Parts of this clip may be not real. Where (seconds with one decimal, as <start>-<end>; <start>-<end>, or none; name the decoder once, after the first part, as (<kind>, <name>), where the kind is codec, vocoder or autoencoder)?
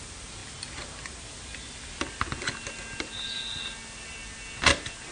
0.0-0.4 (vocoder, BigVGAN v2); 3.5-4.2